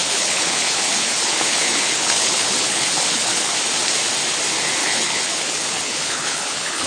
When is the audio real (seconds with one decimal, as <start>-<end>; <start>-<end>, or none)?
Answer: 3.5-4.8